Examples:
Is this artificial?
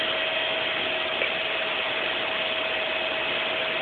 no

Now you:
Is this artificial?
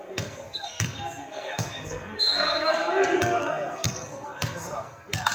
yes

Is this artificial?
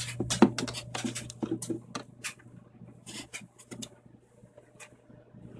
no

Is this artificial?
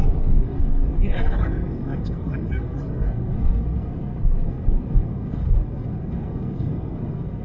yes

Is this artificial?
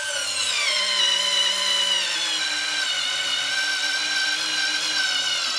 no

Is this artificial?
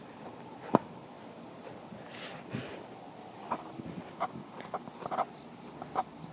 no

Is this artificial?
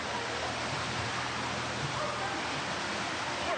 no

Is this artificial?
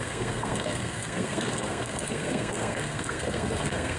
yes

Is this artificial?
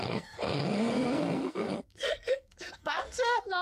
yes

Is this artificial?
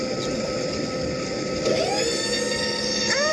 no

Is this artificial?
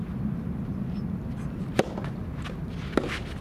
no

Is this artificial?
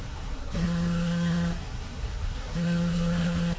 yes